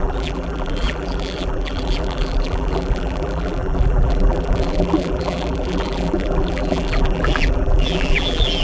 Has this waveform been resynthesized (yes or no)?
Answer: yes